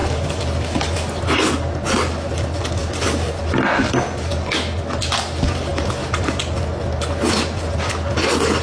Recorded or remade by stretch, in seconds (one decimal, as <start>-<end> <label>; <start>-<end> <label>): 0.0-8.6 recorded